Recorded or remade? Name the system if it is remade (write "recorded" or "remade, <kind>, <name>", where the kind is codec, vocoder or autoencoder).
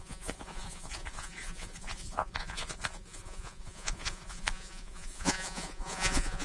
remade, vocoder, Vocos